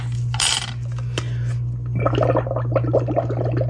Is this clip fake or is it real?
real